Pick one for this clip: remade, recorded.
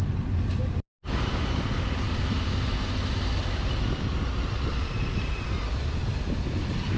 recorded